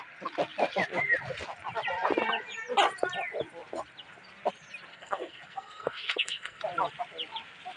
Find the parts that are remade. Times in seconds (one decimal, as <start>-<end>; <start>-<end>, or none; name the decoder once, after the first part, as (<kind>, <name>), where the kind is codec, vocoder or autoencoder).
4.9-6.6 (codec, SNAC)